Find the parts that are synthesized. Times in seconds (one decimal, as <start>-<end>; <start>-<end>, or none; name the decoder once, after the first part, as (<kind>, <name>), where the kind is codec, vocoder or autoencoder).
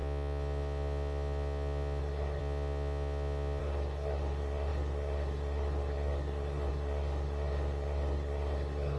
2.0-2.4 (codec, SNAC); 3.6-9.0